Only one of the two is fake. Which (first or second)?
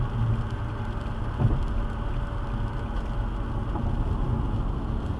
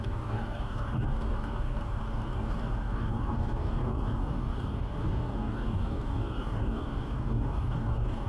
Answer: second